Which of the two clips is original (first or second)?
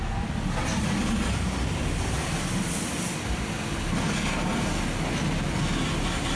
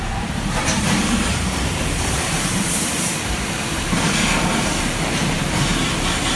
first